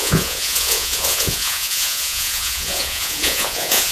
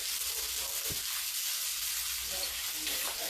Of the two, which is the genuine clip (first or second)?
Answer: second